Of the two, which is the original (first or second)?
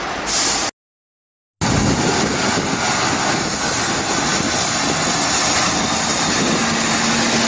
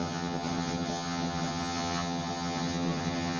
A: first